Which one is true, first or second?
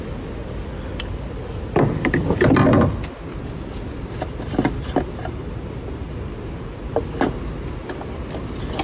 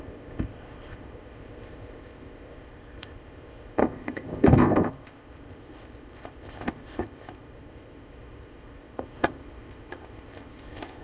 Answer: first